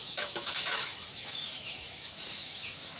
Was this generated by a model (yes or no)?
yes